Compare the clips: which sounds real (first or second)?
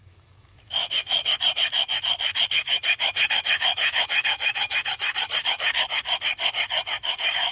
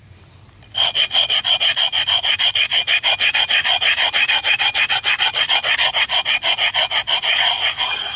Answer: second